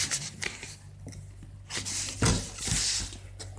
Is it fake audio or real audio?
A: real